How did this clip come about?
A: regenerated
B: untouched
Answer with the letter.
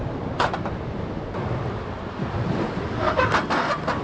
B